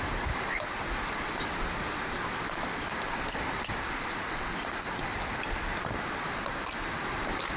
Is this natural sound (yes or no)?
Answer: yes